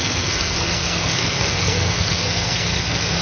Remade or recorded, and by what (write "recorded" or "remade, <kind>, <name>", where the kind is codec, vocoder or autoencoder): remade, codec, SNAC